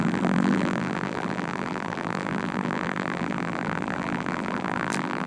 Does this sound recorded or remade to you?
remade